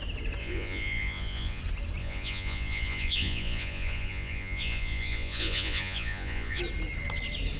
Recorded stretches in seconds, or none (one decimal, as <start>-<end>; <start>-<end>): 0.0-0.4; 1.6-2.0; 6.6-7.6